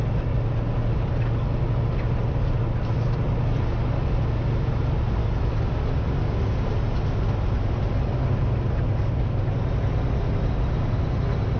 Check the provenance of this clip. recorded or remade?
recorded